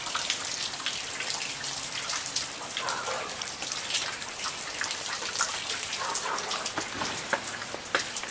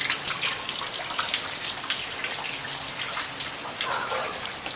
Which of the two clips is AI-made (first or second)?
first